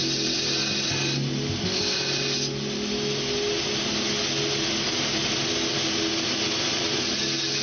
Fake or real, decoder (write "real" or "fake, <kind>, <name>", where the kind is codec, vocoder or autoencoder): real